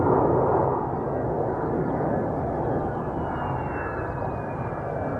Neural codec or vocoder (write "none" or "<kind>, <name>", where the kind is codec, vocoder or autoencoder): none